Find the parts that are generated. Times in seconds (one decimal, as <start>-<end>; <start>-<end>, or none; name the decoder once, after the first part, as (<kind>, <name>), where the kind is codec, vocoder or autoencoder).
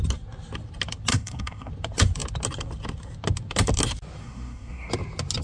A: 1.1-1.7 (codec, SNAC); 4.2-4.9